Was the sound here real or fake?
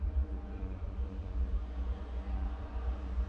fake